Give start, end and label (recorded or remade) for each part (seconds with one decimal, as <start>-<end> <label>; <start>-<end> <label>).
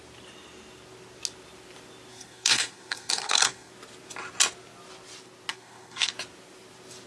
0.0-2.1 recorded; 2.1-3.7 remade; 3.7-5.5 recorded; 5.5-6.1 remade; 6.1-7.1 recorded